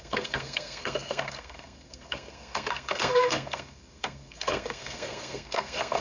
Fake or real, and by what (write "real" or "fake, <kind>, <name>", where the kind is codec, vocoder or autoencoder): fake, codec, SNAC